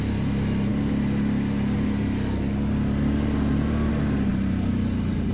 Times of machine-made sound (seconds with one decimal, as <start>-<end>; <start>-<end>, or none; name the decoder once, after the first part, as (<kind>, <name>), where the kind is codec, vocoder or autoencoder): none